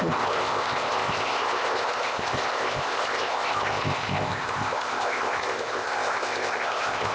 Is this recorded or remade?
remade